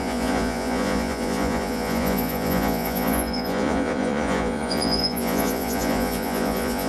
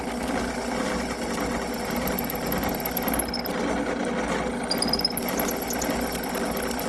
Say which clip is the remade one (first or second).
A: first